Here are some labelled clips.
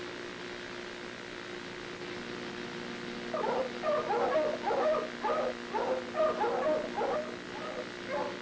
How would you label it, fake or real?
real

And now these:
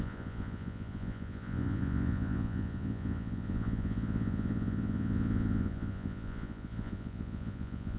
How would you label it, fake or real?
fake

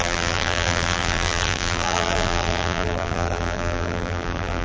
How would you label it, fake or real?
fake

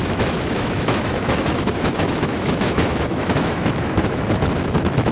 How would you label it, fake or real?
fake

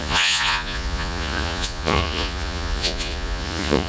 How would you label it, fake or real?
fake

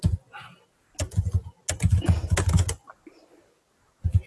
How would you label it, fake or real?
real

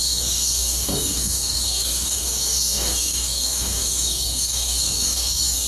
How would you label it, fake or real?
fake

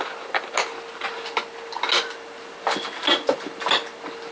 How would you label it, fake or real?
real